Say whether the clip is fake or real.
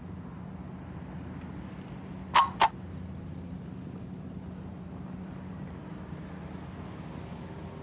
real